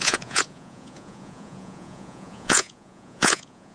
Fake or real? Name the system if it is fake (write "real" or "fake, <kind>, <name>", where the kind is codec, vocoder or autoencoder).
fake, vocoder, Vocos